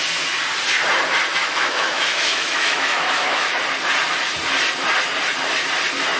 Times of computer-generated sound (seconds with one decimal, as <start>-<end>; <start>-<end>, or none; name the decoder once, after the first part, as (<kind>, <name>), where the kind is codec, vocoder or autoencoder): 1.4-3.6 (autoencoder, DAC-VAE)